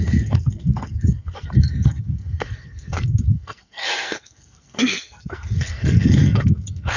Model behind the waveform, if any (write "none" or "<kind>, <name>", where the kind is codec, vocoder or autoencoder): codec, SNAC